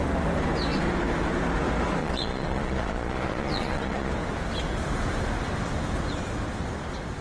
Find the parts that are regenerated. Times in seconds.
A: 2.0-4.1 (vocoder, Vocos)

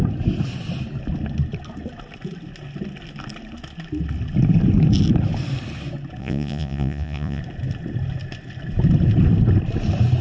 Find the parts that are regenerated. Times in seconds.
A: 6.2-7.4 (vocoder, Vocos)